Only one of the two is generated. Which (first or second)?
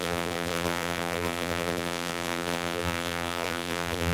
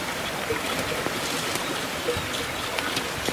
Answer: first